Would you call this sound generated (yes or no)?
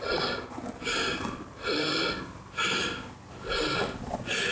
no